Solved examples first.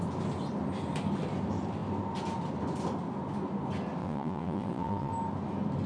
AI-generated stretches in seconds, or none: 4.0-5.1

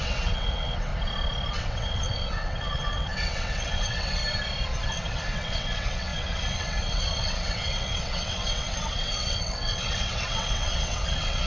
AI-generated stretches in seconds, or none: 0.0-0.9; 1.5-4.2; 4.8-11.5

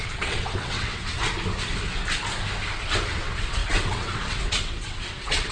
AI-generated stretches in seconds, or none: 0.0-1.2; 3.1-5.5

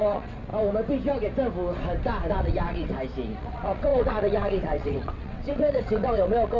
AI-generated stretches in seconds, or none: 0.0-0.5; 2.3-2.9; 3.4-6.6

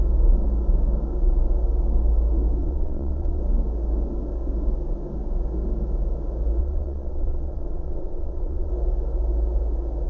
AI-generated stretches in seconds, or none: 2.6-3.4; 6.6-8.7